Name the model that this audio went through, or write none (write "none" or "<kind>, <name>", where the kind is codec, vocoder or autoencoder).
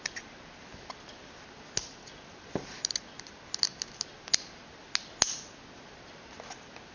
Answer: none